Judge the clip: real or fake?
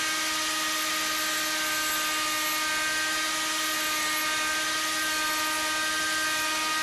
real